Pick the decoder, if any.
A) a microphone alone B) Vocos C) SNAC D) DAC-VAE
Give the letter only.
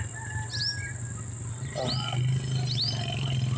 A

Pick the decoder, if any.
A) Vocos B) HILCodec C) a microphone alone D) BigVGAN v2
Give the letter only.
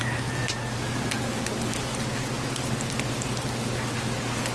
C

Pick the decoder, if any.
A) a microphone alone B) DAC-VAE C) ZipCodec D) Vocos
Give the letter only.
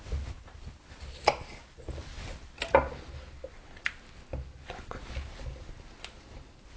A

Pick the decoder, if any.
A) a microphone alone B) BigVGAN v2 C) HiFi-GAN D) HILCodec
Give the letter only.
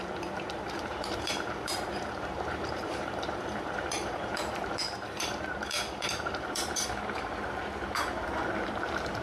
B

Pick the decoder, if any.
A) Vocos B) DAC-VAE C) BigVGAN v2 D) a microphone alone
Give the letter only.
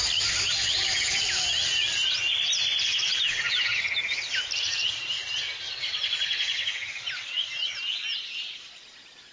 D